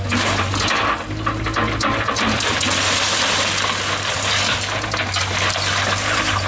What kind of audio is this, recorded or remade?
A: recorded